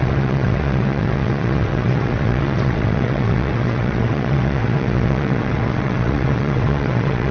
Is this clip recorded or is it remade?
remade